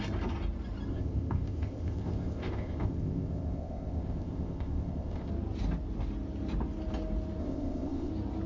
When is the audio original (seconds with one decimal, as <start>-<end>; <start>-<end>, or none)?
0.0-0.9; 5.3-7.4; 8.1-8.5